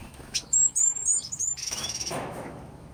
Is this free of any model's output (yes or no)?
no